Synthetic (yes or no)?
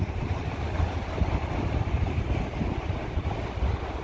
no